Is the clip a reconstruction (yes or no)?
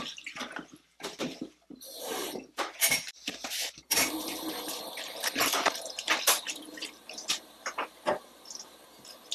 yes